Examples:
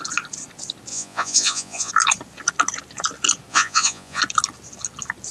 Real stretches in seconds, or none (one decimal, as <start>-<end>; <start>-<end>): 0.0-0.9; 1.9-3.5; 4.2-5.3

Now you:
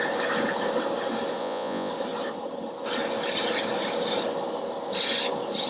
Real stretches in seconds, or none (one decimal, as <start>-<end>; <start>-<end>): 0.0-1.4; 1.9-5.7

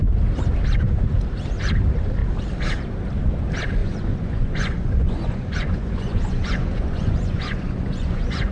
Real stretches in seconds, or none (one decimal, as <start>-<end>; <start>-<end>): 0.0-3.8

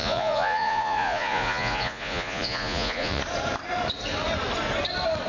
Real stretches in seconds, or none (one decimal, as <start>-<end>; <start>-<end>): 3.2-5.3

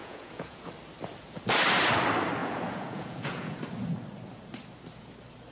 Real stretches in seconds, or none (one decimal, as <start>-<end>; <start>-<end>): 0.6-2.4; 3.6-5.5

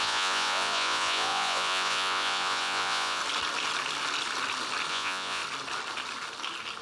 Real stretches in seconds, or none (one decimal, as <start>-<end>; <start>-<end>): 3.2-4.9; 5.4-6.8